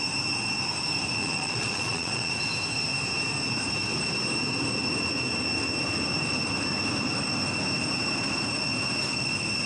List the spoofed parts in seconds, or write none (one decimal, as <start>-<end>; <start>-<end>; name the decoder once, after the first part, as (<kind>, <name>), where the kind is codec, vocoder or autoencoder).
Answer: 1.2-2.3 (vocoder, Vocos)